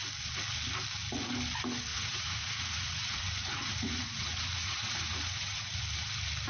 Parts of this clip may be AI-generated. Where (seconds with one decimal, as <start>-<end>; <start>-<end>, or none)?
1.9-5.8